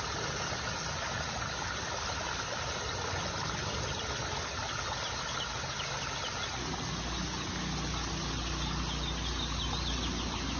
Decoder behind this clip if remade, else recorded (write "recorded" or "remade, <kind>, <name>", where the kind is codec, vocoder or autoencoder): recorded